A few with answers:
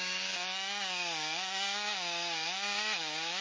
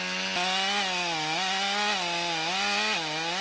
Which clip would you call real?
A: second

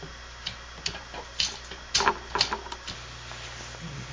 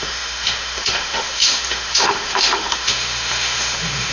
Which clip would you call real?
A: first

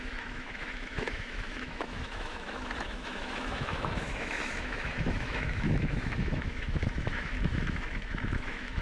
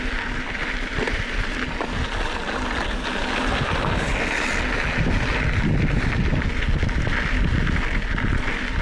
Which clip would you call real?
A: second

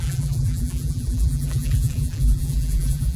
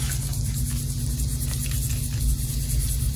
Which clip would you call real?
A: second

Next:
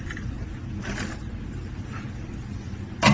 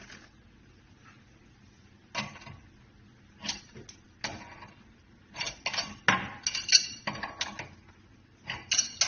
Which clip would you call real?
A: second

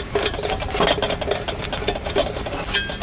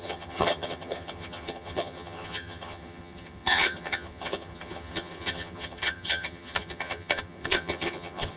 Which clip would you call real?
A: first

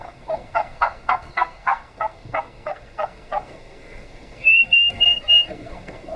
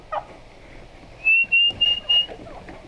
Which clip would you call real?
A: second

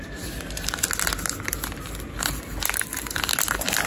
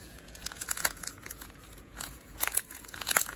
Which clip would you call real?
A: first